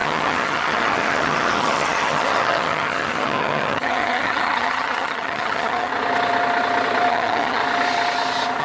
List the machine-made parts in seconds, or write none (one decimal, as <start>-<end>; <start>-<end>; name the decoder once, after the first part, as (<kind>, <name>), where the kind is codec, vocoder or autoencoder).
0.0-5.9 (vocoder, HiFi-GAN); 7.1-7.6